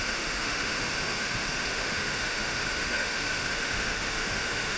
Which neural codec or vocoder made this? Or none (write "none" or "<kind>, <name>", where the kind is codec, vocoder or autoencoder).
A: autoencoder, DAC-VAE